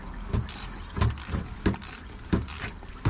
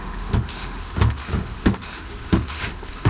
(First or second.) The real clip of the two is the first